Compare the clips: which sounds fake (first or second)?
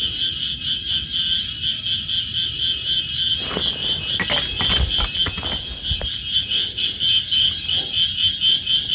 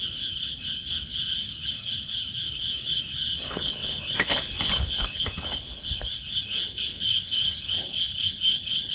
second